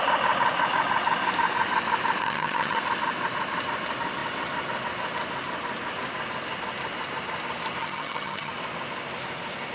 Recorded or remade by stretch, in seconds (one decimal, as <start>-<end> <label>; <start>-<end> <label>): 0.0-2.2 recorded; 2.2-2.8 remade; 2.8-7.8 recorded; 7.8-8.5 remade; 8.5-9.7 recorded